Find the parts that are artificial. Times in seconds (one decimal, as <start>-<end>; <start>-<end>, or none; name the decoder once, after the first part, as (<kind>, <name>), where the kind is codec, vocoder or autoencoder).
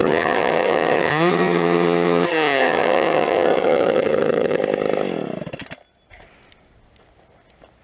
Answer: 0.0-4.6 (vocoder, HiFi-GAN)